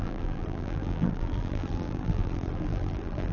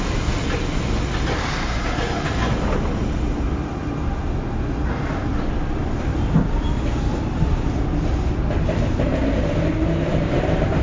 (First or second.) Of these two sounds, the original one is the second